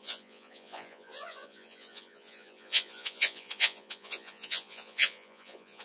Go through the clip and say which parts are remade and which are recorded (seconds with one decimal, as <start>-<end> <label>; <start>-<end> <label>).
0.0-5.8 remade